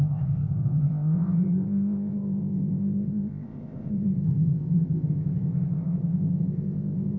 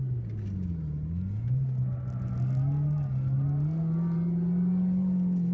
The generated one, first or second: first